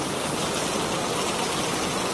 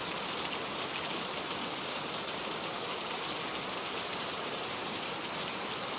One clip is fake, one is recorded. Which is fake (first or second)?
second